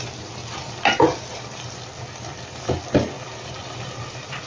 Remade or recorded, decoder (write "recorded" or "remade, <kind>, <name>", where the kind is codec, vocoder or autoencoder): recorded